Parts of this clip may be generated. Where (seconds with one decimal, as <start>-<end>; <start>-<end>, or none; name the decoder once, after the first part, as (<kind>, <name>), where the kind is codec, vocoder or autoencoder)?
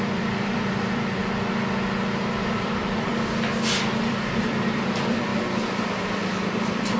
0.0-1.2 (vocoder, BigVGAN v2); 2.4-3.1; 3.7-5.3; 5.9-7.0